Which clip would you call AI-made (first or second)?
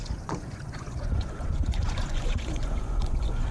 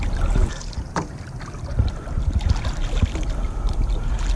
first